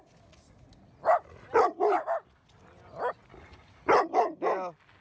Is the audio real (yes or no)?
yes